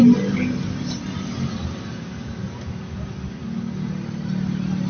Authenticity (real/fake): real